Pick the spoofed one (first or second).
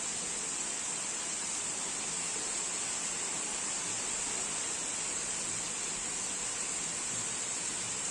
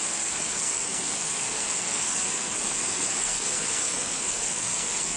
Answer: second